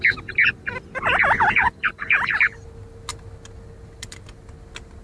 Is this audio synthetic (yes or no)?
no